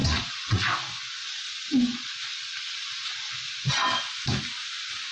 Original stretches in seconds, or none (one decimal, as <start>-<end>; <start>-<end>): 0.7-1.2; 3.7-5.1